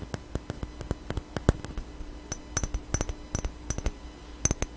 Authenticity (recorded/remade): recorded